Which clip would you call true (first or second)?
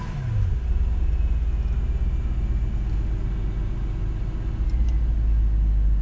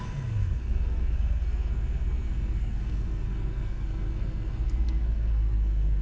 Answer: first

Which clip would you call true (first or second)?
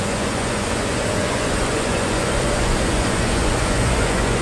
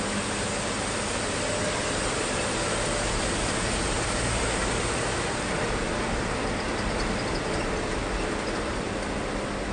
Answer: second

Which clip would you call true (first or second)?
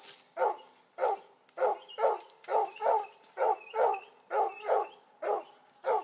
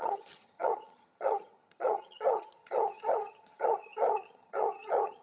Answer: first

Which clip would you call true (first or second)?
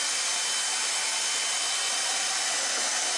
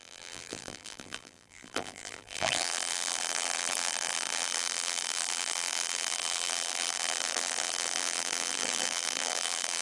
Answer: first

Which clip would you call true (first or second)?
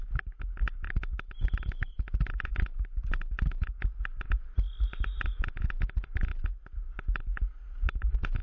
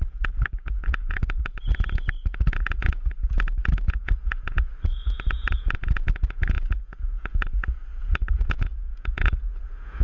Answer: first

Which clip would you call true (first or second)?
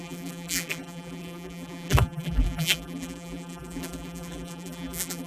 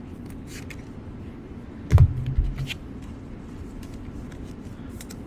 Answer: second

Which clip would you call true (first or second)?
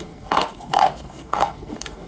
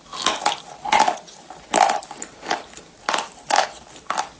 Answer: second